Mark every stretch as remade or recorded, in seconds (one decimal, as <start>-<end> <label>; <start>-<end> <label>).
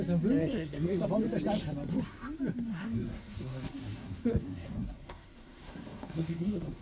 0.0-0.4 recorded; 0.4-1.0 remade; 1.0-2.7 recorded; 2.7-6.8 remade